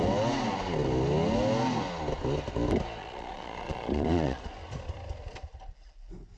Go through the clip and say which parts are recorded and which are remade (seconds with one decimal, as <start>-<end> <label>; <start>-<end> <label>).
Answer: 0.0-3.0 recorded; 3.0-4.5 remade; 4.5-6.4 recorded